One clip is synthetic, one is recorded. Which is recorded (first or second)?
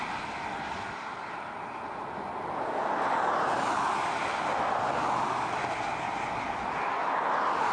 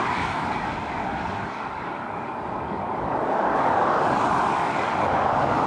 first